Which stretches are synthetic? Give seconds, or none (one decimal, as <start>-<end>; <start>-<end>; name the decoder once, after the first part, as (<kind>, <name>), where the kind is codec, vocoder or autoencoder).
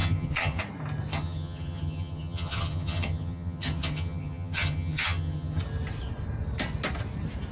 0.0-0.6 (vocoder, HiFi-GAN); 1.1-5.6